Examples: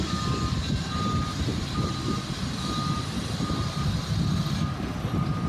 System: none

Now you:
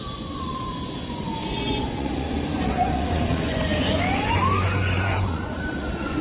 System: vocoder, Vocos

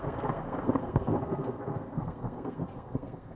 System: codec, SNAC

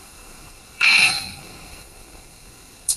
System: codec, SNAC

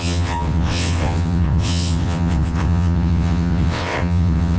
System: vocoder, WaveNeXt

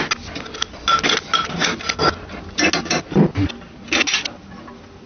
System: none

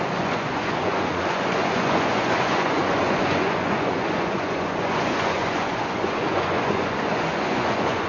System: vocoder, Vocos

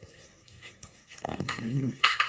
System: codec, SNAC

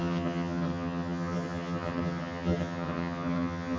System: vocoder, HiFi-GAN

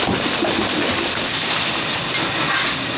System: none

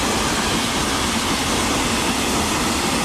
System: none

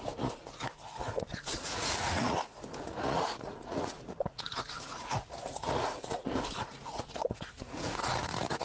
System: vocoder, Vocos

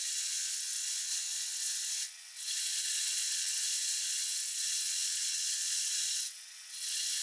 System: vocoder, WaveNeXt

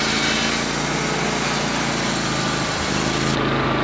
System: none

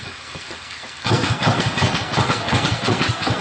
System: codec, SNAC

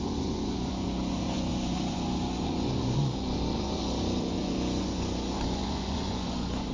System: vocoder, Vocos